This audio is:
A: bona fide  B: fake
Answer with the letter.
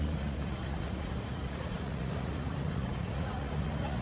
B